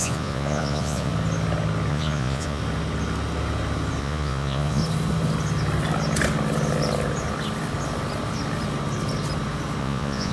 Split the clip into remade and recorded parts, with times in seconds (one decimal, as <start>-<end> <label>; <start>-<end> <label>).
0.0-1.1 remade; 1.1-1.9 recorded; 1.9-2.6 remade; 2.6-4.0 recorded; 4.0-4.8 remade; 4.8-9.8 recorded; 9.8-10.3 remade